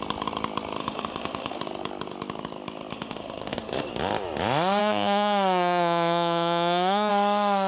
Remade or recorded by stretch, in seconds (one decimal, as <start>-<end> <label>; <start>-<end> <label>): 0.0-0.8 recorded; 0.8-1.6 remade; 1.6-2.9 recorded; 2.9-3.9 remade; 3.9-4.8 recorded; 4.8-7.1 remade; 7.1-7.7 recorded